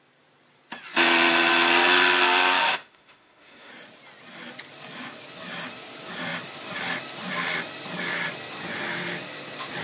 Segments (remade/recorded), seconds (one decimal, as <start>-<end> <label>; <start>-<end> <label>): 0.0-2.6 recorded; 2.6-3.7 remade; 3.7-9.8 recorded